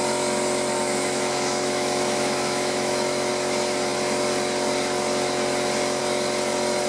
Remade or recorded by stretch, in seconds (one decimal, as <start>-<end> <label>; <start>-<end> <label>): 0.0-0.9 recorded; 0.9-3.3 remade; 3.3-6.9 recorded